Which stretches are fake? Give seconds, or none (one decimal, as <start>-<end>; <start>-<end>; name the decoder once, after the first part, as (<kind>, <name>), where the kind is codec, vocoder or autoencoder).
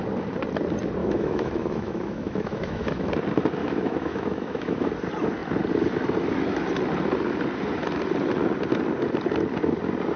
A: 1.0-3.1 (autoencoder, DAC-VAE); 3.6-4.9